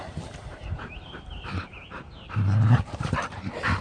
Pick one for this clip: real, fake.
fake